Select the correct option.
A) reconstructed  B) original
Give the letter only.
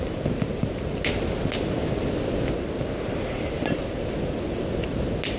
B